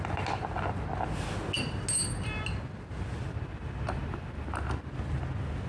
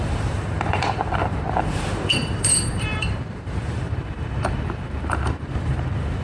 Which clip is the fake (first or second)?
second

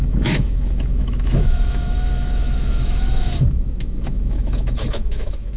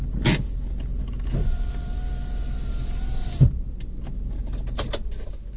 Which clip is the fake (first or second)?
first